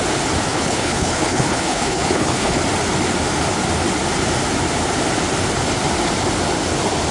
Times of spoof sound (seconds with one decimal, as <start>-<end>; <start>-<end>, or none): 0.5-2.6